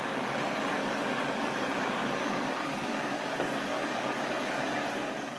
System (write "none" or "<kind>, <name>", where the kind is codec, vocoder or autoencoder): codec, DAC